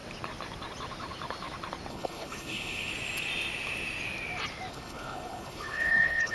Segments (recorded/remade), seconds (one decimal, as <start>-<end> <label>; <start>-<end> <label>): 0.0-1.9 recorded; 1.9-2.9 remade; 2.9-4.7 recorded; 4.7-6.3 remade

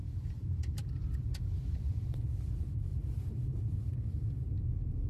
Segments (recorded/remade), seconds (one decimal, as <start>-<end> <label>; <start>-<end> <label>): 0.0-5.1 remade

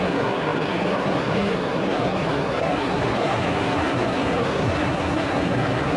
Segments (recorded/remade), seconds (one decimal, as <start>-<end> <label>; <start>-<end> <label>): 0.0-6.0 remade

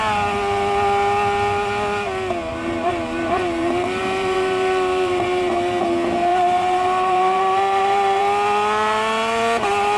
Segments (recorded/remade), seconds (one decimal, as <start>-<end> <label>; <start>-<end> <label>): 0.0-2.5 recorded; 2.5-5.8 remade; 5.8-6.3 recorded; 6.3-8.2 remade; 8.2-10.0 recorded

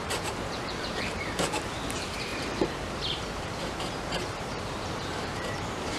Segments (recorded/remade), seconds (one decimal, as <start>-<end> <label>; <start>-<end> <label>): 0.0-6.0 remade

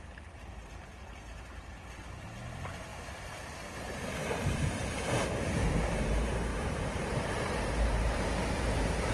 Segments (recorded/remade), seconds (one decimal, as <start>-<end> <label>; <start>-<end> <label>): 0.0-9.1 remade